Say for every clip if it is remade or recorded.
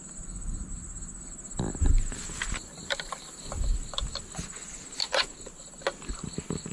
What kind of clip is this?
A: recorded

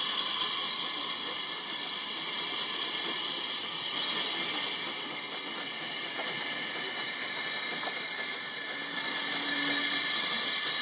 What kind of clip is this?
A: recorded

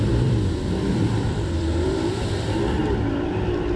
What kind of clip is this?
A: remade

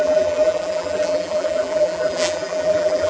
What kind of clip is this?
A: remade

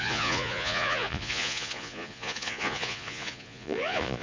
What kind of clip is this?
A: remade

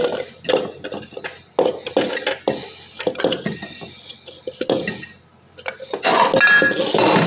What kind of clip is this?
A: recorded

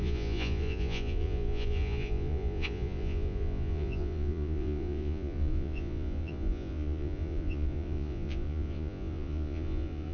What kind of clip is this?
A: remade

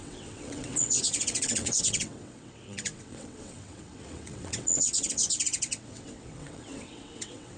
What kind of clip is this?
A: remade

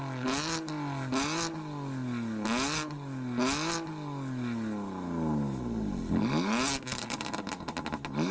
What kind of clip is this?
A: recorded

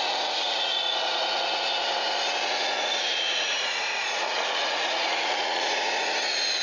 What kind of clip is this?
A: remade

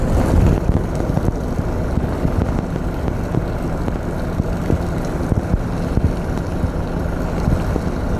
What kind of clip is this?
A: recorded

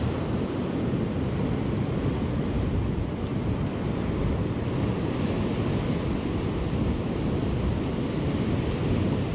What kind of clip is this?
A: recorded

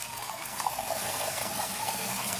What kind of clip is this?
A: remade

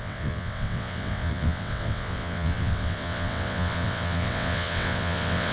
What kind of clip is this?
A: remade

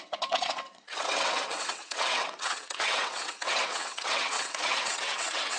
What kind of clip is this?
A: remade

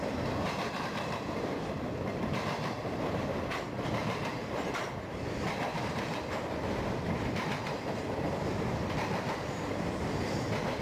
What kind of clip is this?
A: remade